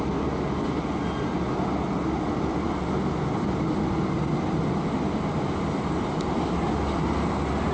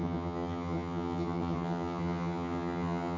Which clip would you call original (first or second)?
first